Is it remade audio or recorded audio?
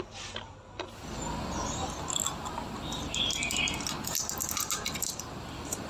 recorded